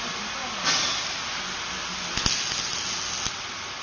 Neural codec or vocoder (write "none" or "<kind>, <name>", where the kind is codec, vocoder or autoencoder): none